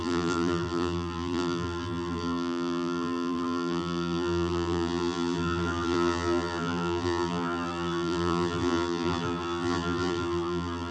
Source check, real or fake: fake